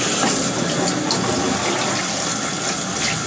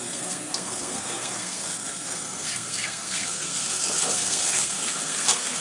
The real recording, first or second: first